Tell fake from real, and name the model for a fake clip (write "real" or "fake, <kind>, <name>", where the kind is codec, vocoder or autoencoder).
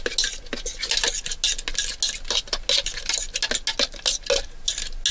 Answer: real